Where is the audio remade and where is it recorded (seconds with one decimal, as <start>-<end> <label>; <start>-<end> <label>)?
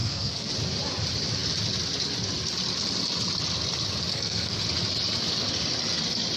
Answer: 0.0-0.5 remade; 0.5-4.1 recorded; 4.1-4.6 remade; 4.6-6.4 recorded